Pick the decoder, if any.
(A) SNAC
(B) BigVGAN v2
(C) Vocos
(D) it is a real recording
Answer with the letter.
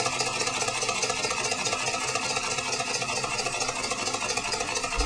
D